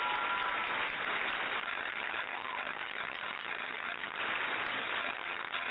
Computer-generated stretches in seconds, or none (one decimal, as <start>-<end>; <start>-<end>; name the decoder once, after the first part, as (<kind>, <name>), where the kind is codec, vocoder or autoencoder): 1.6-4.2 (vocoder, HiFi-GAN); 5.0-5.7